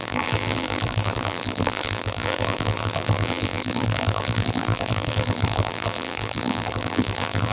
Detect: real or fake fake